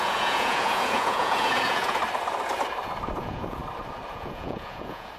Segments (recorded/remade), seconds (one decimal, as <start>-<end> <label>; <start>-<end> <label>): 0.0-2.0 remade; 2.0-3.2 recorded; 3.2-3.6 remade; 3.6-4.1 recorded; 4.1-5.2 remade